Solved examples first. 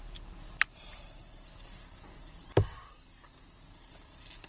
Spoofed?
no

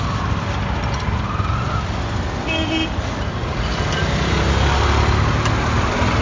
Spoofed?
no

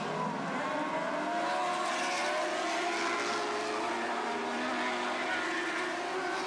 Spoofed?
no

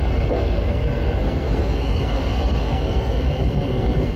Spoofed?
yes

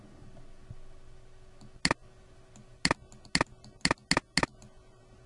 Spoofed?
no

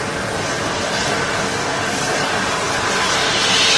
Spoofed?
no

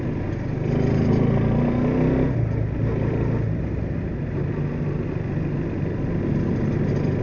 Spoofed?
no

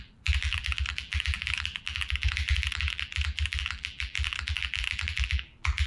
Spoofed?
yes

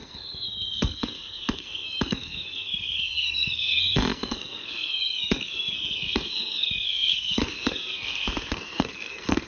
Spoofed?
yes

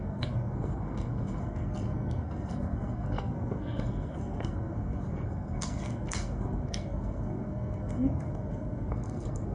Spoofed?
yes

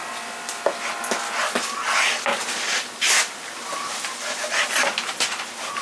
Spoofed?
no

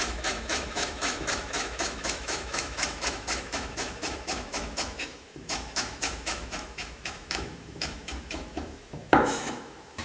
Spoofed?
yes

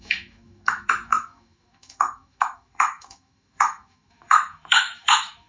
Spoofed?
yes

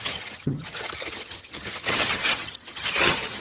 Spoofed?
yes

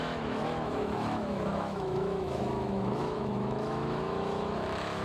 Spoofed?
yes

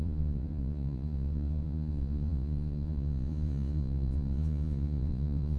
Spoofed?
yes